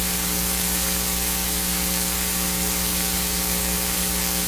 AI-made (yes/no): yes